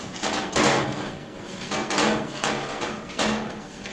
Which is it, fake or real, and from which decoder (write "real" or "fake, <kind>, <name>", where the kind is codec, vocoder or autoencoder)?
fake, codec, SNAC